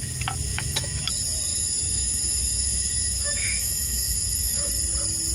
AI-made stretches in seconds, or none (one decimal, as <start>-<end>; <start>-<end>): 0.5-1.1; 1.5-4.7